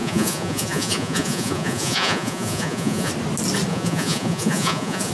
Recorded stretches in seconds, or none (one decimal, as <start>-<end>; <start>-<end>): 3.1-3.7